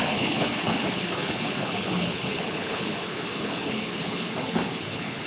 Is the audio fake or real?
fake